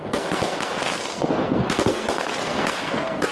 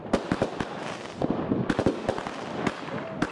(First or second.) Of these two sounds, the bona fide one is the second